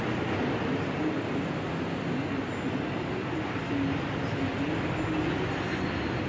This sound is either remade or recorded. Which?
recorded